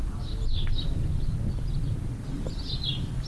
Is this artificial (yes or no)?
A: no